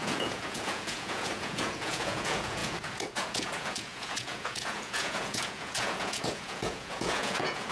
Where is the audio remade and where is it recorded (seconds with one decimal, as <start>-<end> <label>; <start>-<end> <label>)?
0.0-7.7 remade